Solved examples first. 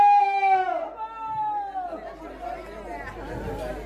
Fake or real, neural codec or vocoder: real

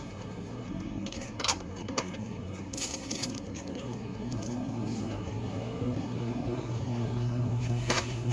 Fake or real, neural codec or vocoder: fake, codec, SNAC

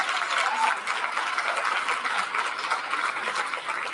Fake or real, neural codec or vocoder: real